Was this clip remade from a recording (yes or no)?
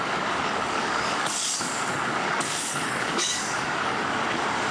yes